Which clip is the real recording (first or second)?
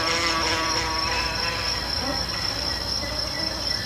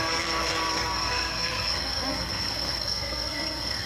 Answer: first